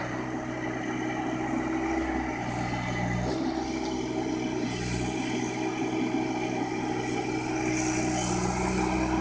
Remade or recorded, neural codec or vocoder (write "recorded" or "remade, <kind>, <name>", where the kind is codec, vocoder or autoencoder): recorded